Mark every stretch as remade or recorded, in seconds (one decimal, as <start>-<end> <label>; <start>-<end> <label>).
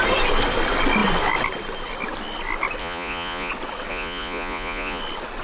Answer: 0.0-2.8 recorded; 2.8-3.5 remade; 3.5-3.9 recorded; 3.9-5.0 remade; 5.0-5.4 recorded